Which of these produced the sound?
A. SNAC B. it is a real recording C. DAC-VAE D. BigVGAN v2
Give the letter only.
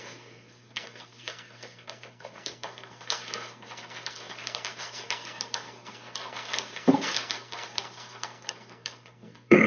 A